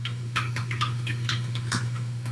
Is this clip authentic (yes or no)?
no